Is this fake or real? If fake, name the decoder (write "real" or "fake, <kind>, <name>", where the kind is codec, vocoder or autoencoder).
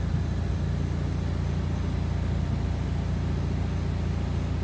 real